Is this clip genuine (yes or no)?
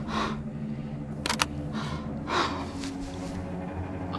yes